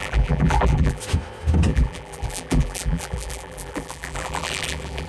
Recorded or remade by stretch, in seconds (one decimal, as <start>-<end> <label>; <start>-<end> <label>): 0.0-1.0 remade; 1.0-1.7 recorded; 1.7-5.1 remade